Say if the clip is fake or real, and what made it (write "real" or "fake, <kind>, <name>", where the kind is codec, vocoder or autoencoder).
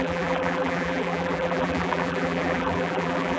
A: fake, vocoder, BigVGAN v2